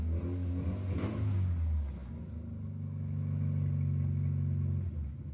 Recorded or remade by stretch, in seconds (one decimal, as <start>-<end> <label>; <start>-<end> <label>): 0.0-5.3 recorded